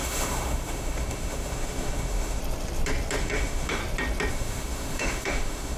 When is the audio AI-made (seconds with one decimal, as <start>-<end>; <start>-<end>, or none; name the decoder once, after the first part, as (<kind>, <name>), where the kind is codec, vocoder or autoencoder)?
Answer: 0.0-2.4 (autoencoder, DAC-VAE); 3.2-3.8; 4.3-5.8

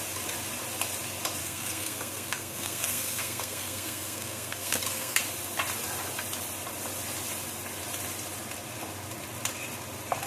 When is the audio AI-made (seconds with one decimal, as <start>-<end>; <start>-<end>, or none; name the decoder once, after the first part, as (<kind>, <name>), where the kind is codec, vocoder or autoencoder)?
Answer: 1.4-5.2 (codec, SNAC)